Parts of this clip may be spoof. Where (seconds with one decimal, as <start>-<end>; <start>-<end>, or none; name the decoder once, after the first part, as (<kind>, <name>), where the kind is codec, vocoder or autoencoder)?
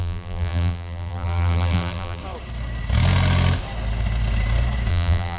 0.0-2.2 (vocoder, BigVGAN v2); 4.9-5.4